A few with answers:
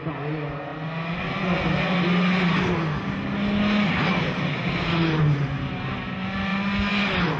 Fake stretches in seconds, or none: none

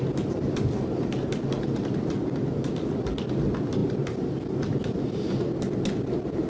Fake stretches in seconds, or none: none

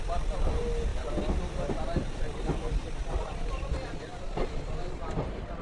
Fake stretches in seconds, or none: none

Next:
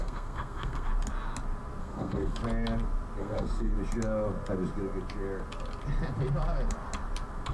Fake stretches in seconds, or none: 0.0-0.9 (codec, SNAC); 1.8-2.4; 3.2-3.7

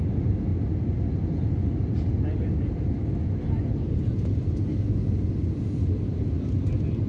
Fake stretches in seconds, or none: none